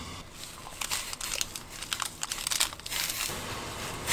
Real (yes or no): yes